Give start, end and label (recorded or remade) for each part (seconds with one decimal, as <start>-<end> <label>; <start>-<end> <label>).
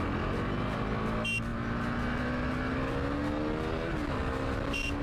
0.0-5.0 recorded